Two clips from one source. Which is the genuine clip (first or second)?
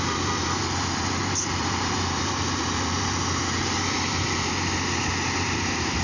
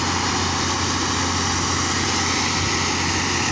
second